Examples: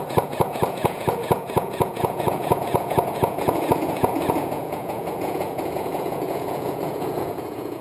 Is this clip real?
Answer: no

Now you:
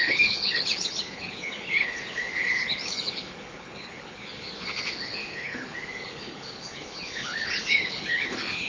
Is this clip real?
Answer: no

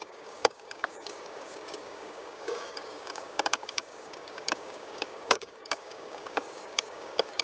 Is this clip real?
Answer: no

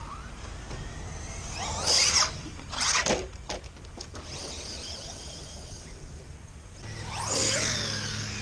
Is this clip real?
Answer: yes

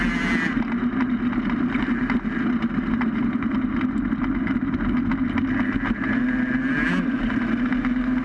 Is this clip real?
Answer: yes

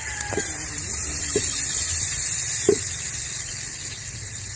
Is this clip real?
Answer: no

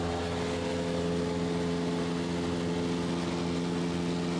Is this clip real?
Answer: yes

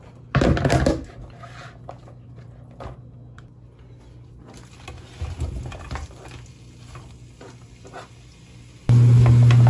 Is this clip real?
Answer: yes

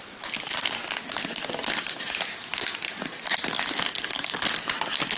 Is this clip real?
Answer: yes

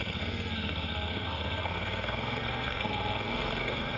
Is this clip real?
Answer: no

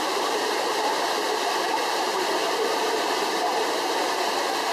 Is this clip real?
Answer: no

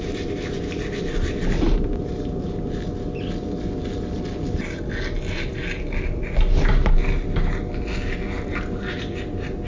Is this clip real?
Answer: yes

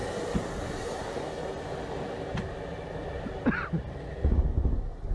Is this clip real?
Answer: yes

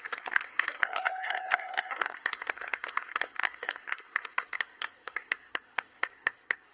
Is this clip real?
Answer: no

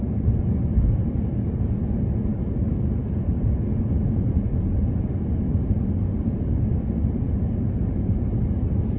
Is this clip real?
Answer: yes